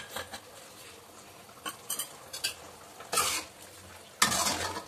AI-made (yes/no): no